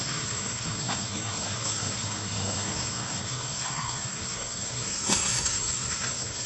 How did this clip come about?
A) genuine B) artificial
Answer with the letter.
B